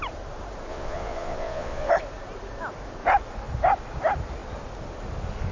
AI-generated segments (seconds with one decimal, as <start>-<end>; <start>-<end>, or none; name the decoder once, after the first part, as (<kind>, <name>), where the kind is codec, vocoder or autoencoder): 0.7-1.9 (vocoder, Vocos)